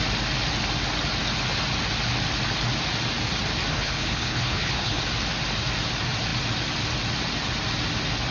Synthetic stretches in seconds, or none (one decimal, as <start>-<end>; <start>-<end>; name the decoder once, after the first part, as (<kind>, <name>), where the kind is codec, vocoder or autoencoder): 3.7-5.0 (codec, HILCodec)